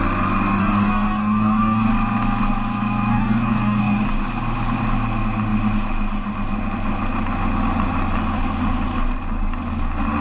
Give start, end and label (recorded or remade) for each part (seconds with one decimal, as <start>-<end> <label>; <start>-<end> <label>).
0.0-0.6 recorded; 0.6-1.9 remade; 1.9-3.1 recorded; 3.1-4.0 remade; 4.0-10.2 recorded